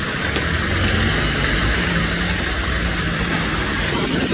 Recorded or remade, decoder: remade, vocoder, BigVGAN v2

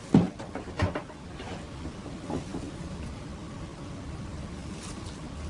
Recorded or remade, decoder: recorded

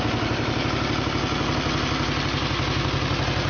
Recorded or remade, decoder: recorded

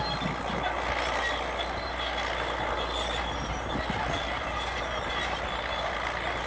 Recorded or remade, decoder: recorded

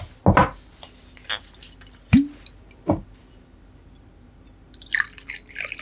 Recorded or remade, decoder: recorded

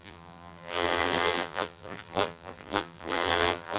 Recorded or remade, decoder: remade, vocoder, BigVGAN v2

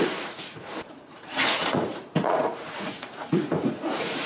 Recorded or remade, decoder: remade, vocoder, Vocos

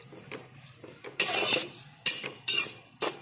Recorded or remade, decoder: remade, vocoder, BigVGAN v2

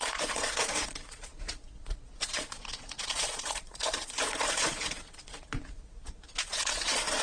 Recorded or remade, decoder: remade, vocoder, Vocos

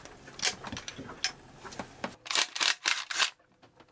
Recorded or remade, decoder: recorded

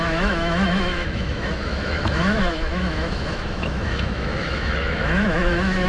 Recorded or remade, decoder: remade, autoencoder, DAC-VAE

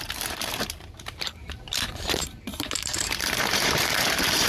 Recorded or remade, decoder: remade, vocoder, BigVGAN v2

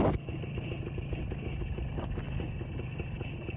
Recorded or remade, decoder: recorded